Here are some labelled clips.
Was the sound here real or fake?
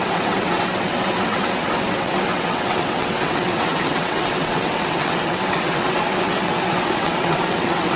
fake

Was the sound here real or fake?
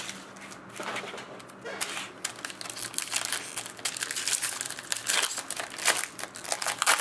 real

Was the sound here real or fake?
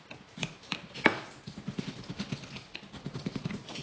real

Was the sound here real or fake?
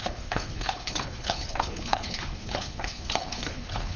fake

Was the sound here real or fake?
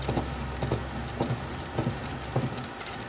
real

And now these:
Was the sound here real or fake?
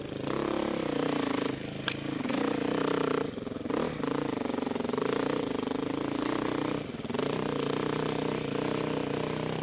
real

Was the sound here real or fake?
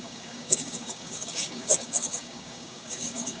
fake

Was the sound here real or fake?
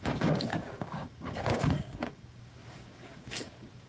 fake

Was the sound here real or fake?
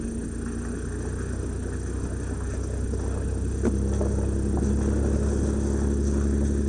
real